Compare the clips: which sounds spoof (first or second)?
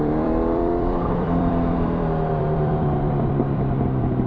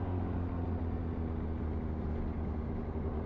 first